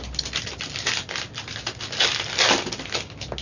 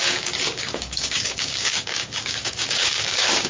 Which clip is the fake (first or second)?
second